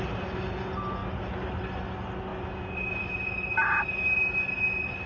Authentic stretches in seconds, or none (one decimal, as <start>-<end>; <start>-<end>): 0.0-5.1